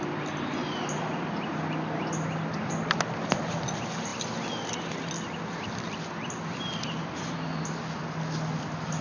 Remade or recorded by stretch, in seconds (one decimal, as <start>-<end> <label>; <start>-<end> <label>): 0.0-9.0 recorded